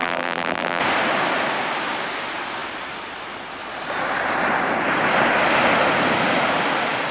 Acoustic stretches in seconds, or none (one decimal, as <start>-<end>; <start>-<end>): 0.8-7.1